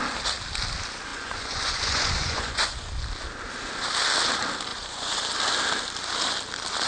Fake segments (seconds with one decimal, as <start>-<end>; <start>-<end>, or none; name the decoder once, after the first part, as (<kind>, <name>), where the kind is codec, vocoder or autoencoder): 1.1-2.9 (vocoder, Vocos); 4.7-5.2